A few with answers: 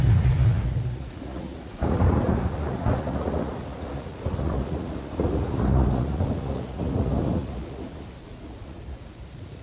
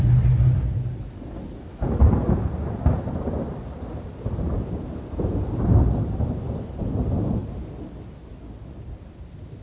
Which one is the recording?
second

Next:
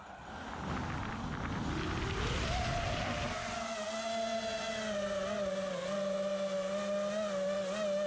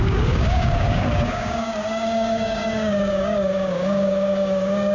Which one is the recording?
first